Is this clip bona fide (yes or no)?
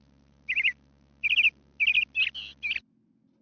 yes